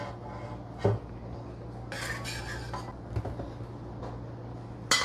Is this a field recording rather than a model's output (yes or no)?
yes